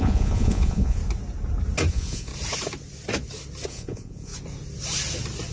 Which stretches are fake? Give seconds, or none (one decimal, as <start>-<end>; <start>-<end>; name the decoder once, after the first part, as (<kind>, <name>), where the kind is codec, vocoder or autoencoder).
0.0-1.0 (vocoder, Vocos); 1.9-2.3; 3.7-4.3